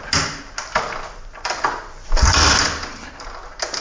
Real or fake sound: real